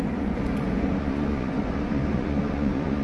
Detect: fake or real fake